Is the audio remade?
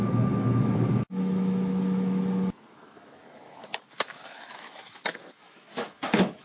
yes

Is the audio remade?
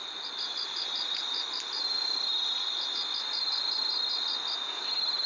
no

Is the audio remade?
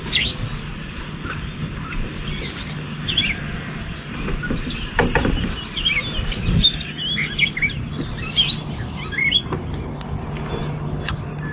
no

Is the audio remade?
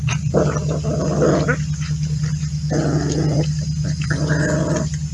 no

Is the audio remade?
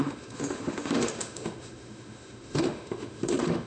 yes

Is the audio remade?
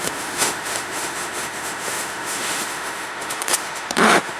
yes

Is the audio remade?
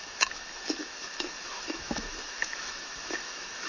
yes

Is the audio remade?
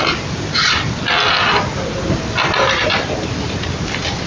no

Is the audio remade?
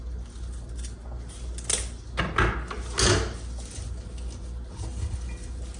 no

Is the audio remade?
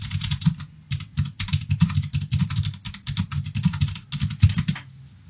no